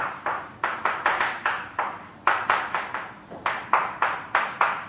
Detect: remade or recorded remade